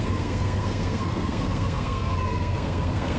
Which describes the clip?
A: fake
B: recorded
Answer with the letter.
A